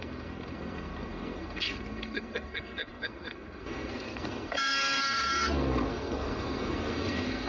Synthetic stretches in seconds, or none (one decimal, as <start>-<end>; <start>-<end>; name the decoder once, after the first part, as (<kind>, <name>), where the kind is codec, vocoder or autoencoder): 0.0-7.5 (codec, SNAC)